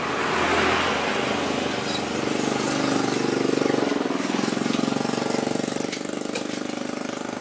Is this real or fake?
real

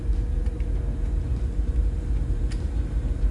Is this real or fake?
fake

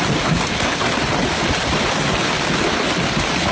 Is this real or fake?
real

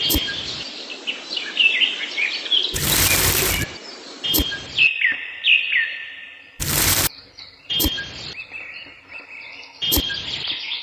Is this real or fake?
fake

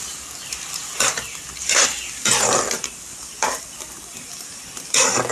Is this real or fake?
fake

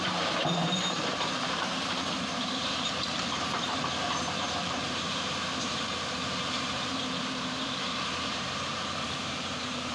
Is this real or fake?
fake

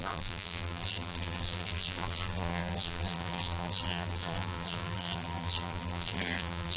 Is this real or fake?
fake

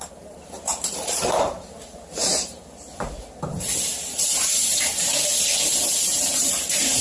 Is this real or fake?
fake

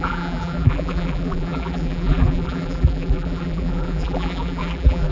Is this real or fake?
fake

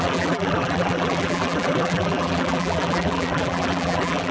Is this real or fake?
fake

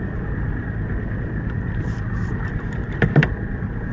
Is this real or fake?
fake